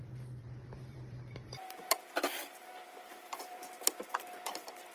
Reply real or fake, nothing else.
fake